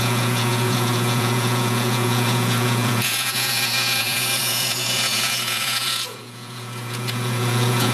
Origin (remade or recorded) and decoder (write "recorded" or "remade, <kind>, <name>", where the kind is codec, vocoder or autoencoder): remade, vocoder, Vocos